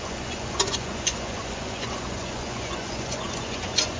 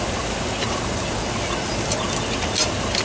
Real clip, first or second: second